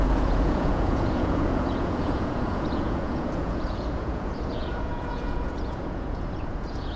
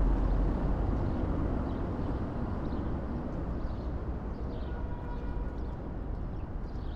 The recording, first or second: second